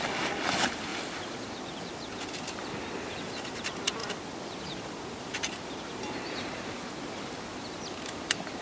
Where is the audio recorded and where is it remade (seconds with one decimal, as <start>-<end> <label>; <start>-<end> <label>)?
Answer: 0.0-0.9 recorded; 0.9-1.9 remade; 1.9-4.0 recorded; 4.0-8.6 remade